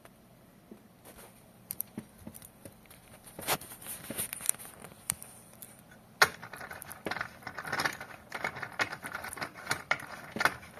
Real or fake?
fake